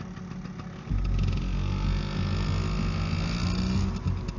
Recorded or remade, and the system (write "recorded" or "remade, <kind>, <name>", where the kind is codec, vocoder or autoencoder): recorded